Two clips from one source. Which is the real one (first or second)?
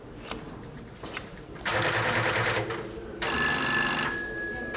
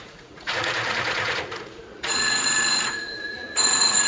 first